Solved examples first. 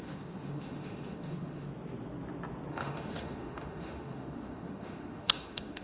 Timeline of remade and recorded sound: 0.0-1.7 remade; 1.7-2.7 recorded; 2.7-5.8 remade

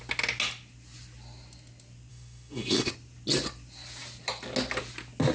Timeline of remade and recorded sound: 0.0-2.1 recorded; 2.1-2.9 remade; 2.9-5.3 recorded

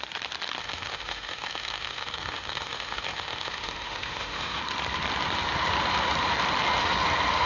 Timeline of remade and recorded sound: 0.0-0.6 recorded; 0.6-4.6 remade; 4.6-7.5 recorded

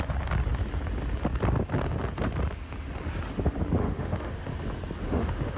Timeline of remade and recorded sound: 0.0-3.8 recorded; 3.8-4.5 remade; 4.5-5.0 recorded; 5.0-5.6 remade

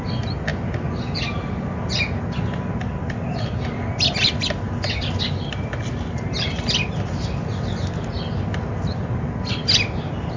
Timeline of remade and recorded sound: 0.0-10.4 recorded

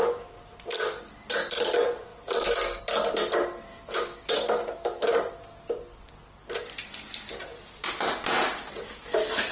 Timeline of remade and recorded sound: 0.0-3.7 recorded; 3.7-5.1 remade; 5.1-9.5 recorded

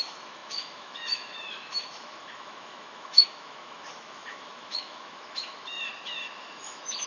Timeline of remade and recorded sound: 0.0-7.1 remade

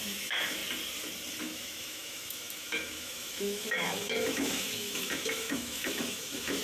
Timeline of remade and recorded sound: 0.0-0.6 remade; 0.6-1.4 recorded; 1.4-6.6 remade